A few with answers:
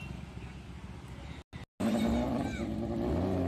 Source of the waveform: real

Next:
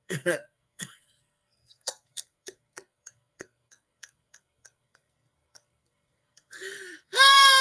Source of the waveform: fake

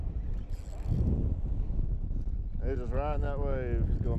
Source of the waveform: real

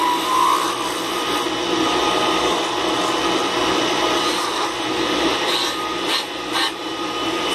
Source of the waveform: real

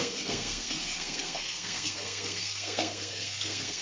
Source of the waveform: fake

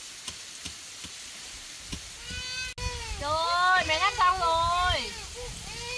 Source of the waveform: real